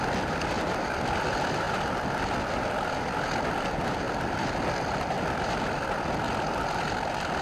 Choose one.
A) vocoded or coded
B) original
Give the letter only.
B